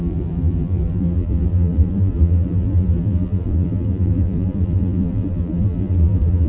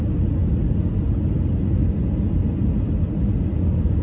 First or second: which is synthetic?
first